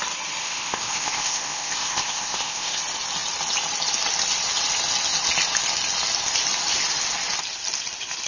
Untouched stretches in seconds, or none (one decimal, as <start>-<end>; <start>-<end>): 0.0-0.4; 2.8-8.3